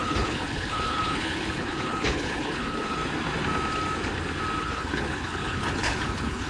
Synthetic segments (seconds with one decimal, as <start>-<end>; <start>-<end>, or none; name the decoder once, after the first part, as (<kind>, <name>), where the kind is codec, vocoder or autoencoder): 0.0-3.0 (codec, HILCodec); 4.6-6.5